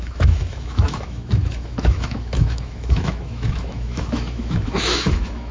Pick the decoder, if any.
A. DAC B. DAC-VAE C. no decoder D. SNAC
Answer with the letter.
B